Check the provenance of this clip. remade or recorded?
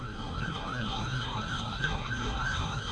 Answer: remade